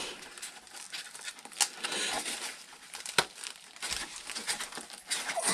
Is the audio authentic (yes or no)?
yes